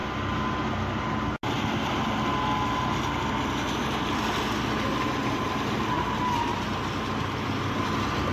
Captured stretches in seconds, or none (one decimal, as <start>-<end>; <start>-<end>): 0.0-8.3